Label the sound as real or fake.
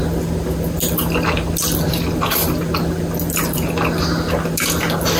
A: real